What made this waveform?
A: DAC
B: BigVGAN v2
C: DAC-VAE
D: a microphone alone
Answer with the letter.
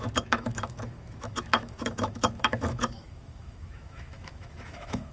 C